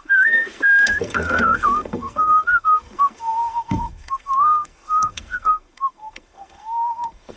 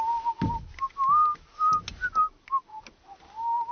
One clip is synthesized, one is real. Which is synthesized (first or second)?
first